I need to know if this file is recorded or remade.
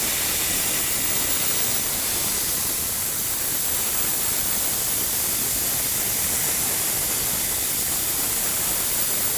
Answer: recorded